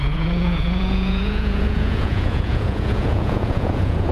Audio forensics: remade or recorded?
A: remade